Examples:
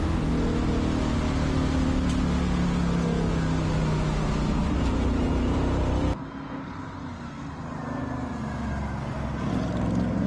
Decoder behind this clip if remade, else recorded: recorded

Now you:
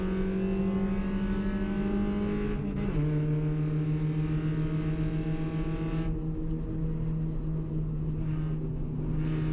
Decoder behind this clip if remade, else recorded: recorded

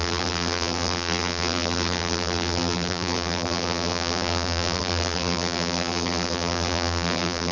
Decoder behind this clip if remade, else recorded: remade, vocoder, BigVGAN v2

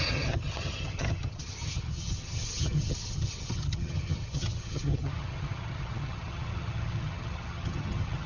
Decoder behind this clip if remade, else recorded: remade, vocoder, HiFi-GAN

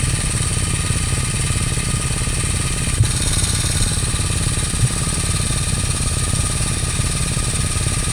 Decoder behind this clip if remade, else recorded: recorded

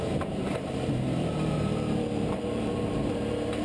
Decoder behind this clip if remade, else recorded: remade, vocoder, BigVGAN v2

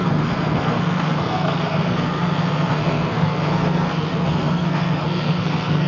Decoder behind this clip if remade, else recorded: remade, codec, SNAC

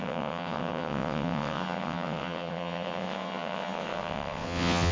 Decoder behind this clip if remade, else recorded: remade, vocoder, WaveNeXt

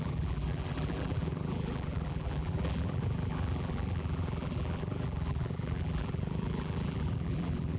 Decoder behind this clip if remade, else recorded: remade, vocoder, BigVGAN v2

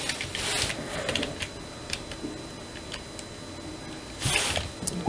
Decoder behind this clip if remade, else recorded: recorded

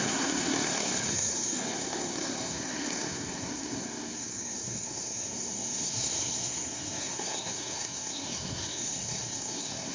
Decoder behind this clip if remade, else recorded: remade, codec, SNAC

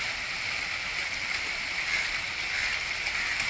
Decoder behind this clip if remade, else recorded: recorded